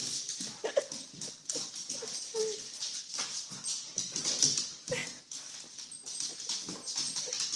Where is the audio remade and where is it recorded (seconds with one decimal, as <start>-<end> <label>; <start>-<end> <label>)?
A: 0.0-7.6 recorded